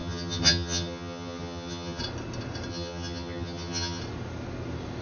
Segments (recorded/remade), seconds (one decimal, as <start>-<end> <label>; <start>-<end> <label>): 0.0-2.0 remade; 2.0-2.7 recorded; 2.7-4.0 remade; 4.0-5.0 recorded